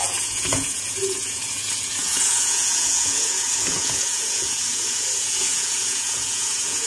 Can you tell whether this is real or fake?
fake